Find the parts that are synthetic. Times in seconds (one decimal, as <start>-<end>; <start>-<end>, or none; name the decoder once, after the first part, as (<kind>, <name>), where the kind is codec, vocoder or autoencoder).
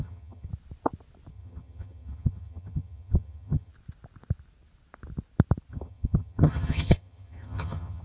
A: 0.0-0.5 (vocoder, HiFi-GAN); 1.3-3.7; 5.7-8.0